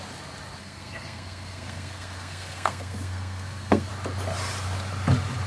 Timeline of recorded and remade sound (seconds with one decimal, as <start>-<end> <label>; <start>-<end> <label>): 0.0-0.6 recorded; 0.6-3.9 remade; 3.9-5.5 recorded